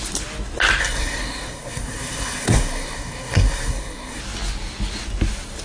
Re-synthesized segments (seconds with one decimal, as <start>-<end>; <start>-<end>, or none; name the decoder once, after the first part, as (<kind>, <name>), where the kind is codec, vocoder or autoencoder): 0.8-4.2 (codec, SNAC)